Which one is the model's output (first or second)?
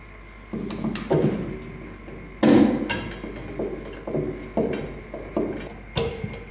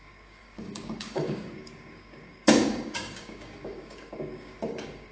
second